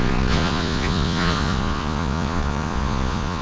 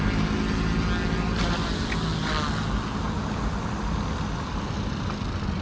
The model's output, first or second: first